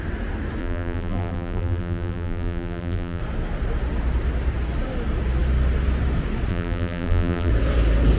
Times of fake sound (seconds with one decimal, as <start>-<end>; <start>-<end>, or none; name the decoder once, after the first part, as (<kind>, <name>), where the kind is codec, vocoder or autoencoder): 0.6-3.2 (vocoder, BigVGAN v2); 6.5-7.5